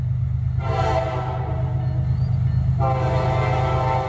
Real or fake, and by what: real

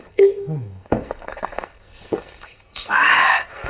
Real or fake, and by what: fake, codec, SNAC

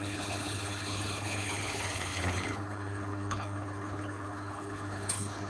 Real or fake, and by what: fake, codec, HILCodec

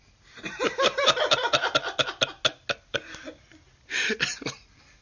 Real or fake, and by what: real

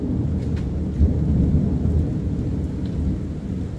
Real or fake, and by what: real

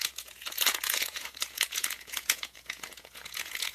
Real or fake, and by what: fake, vocoder, Vocos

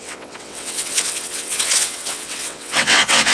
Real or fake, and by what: fake, vocoder, WaveNeXt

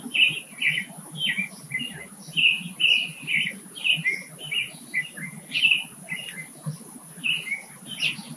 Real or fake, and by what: real